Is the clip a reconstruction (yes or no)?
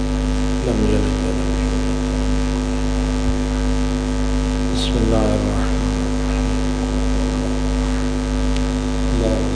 no